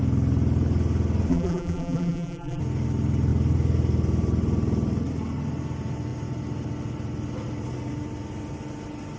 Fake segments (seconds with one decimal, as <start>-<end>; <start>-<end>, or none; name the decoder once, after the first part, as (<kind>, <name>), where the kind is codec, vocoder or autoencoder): 1.3-2.6 (vocoder, BigVGAN v2)